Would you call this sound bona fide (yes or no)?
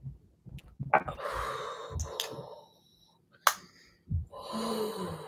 yes